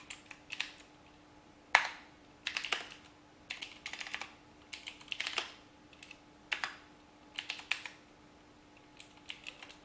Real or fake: real